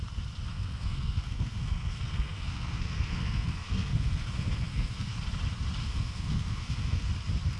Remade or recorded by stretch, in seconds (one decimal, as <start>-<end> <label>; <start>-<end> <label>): 0.0-0.5 recorded; 0.5-5.1 remade; 5.1-5.8 recorded; 5.8-7.1 remade; 7.1-7.6 recorded